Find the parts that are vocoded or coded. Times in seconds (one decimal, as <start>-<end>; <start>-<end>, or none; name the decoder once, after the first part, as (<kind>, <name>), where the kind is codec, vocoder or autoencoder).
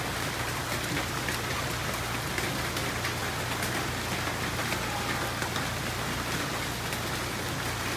none